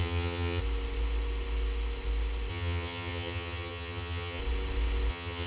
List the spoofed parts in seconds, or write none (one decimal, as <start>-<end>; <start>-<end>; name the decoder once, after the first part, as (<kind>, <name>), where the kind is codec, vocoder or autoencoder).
0.0-0.6 (vocoder, HiFi-GAN); 2.5-4.4; 5.1-5.5